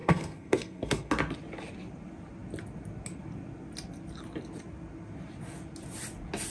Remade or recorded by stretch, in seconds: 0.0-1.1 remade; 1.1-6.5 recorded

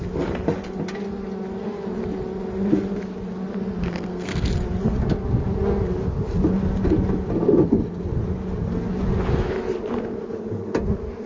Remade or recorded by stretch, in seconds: 0.0-3.8 recorded; 3.8-4.5 remade; 4.5-11.3 recorded

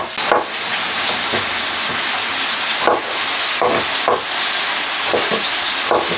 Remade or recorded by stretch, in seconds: 0.0-6.2 recorded

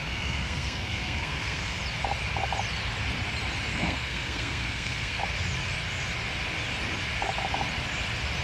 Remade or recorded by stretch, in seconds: 0.0-1.8 remade; 1.8-3.7 recorded; 3.7-5.2 remade; 5.2-8.4 recorded

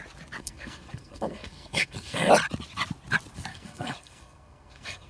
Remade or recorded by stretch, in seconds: 0.0-0.4 recorded; 0.4-2.3 remade; 2.3-3.5 recorded; 3.5-5.1 remade

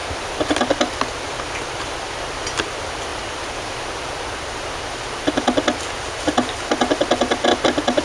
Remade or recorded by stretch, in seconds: 0.0-8.0 recorded